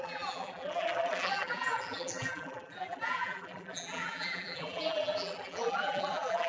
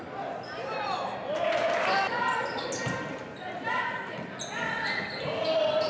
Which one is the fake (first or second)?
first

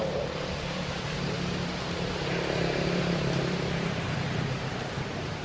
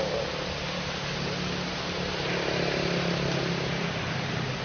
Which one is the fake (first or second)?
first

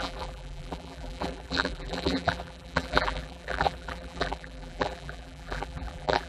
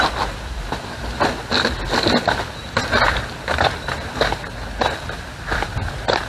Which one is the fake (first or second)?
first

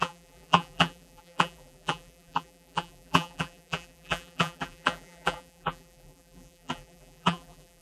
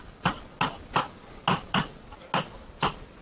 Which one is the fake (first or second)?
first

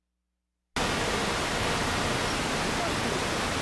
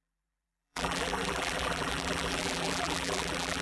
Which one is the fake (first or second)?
second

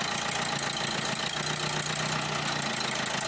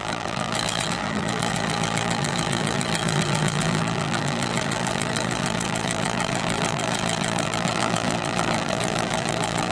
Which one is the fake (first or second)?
second